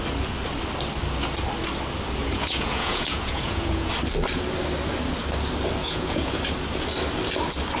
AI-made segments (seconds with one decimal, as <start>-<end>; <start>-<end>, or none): 2.2-3.9; 5.8-6.4